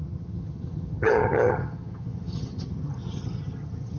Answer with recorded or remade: remade